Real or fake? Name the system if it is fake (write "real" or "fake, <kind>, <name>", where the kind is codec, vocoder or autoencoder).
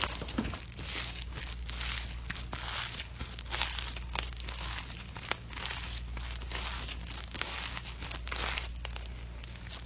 real